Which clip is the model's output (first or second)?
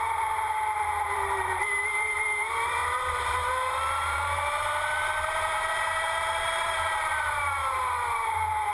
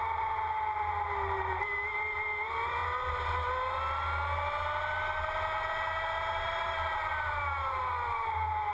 first